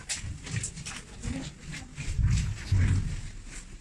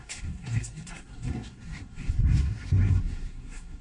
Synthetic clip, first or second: second